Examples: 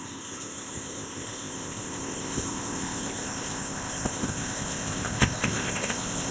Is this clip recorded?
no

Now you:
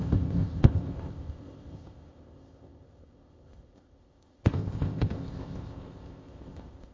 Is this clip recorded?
no